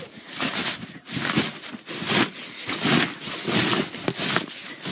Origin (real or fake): real